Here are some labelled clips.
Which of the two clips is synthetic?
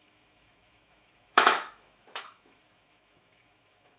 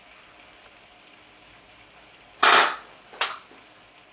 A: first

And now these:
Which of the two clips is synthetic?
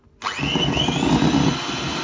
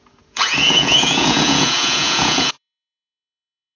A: second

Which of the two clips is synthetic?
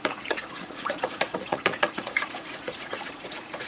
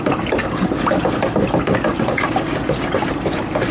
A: first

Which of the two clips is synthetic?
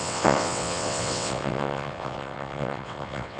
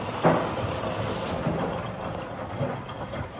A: first